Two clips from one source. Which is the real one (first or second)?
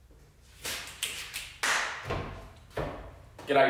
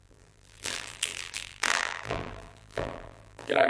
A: first